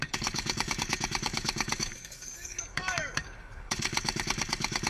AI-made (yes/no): yes